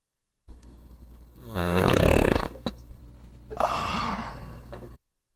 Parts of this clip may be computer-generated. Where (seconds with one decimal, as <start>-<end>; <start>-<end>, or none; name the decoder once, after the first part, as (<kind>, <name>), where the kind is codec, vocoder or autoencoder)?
0.0-3.0 (codec, SNAC); 4.3-5.4